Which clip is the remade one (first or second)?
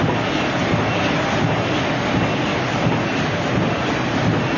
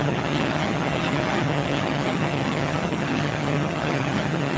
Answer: second